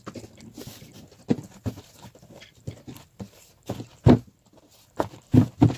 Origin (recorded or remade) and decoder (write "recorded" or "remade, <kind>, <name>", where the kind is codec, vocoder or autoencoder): recorded